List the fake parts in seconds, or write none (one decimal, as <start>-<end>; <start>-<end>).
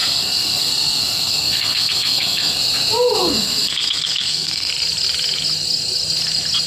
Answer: 0.0-2.6; 3.2-4.7